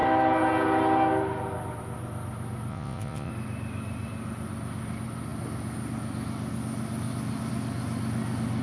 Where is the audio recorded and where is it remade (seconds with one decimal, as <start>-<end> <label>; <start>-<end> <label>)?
0.0-2.7 recorded; 2.7-3.3 remade; 3.3-8.6 recorded